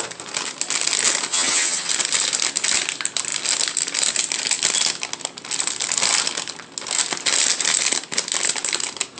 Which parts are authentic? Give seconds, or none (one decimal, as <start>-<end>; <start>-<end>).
0.0-1.3; 1.9-9.2